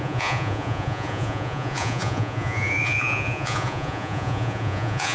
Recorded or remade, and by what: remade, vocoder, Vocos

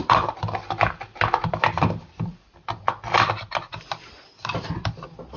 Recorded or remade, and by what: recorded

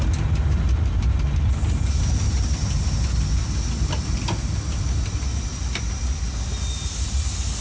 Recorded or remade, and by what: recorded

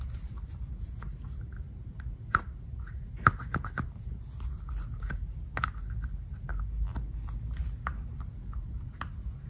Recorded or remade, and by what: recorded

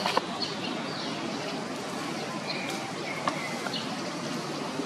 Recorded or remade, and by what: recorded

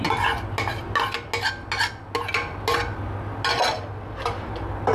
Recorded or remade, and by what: recorded